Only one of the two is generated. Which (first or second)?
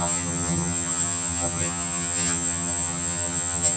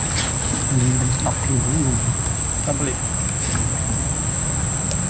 first